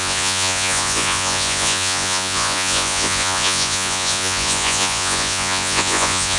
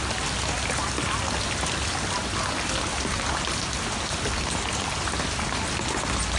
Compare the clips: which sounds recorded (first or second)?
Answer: second